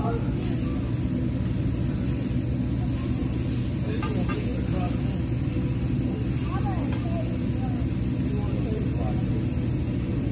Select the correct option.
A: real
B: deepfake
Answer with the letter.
A